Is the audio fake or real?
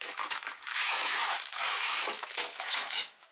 fake